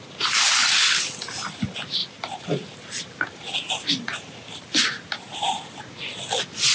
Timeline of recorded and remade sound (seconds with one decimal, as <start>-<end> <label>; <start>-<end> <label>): 0.0-2.0 recorded; 2.0-5.8 remade; 5.8-6.7 recorded